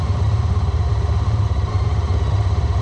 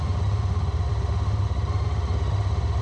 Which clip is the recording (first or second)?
second